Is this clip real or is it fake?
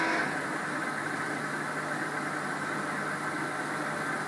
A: real